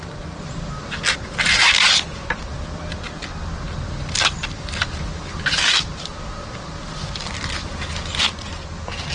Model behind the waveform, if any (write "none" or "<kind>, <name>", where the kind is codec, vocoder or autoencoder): none